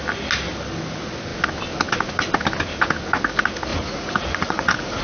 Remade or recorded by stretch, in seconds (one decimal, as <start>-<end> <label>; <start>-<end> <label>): 0.0-3.7 recorded; 3.7-5.0 remade